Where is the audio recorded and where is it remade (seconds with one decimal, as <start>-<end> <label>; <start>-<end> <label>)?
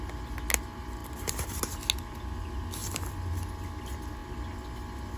0.0-1.0 recorded; 1.0-1.8 remade; 1.8-2.8 recorded; 2.8-3.3 remade; 3.3-5.2 recorded